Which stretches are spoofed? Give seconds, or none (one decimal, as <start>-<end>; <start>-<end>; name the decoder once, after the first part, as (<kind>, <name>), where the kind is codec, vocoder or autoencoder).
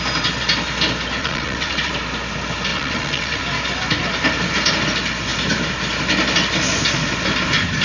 1.2-1.9 (vocoder, WaveNeXt); 2.7-3.4